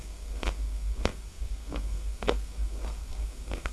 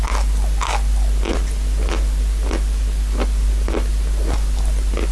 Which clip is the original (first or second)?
second